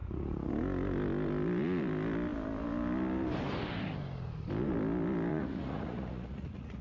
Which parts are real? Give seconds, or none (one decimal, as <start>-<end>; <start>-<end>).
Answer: 0.5-5.3